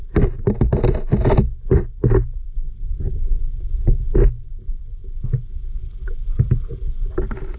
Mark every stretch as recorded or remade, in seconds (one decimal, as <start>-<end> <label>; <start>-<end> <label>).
0.0-7.6 recorded